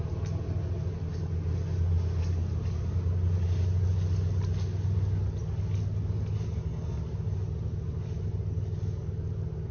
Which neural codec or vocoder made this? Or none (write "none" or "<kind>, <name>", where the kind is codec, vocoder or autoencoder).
none